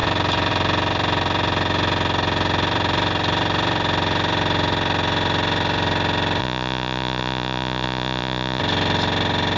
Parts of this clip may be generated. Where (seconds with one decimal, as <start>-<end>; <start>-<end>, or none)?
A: 6.4-8.6